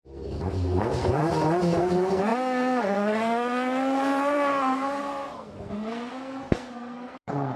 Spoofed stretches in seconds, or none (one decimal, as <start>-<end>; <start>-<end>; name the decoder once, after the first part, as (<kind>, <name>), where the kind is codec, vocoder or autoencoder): 0.0-1.2 (codec, SNAC); 1.8-7.6